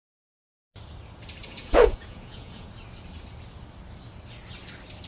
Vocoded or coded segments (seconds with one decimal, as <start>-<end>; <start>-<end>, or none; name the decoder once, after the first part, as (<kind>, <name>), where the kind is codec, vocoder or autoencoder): 1.4-2.7 (vocoder, Vocos)